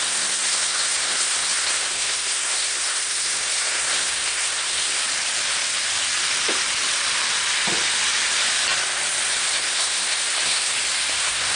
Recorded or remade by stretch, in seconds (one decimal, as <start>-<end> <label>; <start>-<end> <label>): 0.0-5.0 remade; 5.0-9.4 recorded; 9.4-10.7 remade; 10.7-11.2 recorded; 11.2-11.6 remade